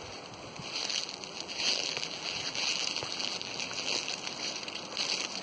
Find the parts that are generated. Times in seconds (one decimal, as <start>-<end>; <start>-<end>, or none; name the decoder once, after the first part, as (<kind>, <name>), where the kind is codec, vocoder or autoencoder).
0.9-4.1 (vocoder, BigVGAN v2)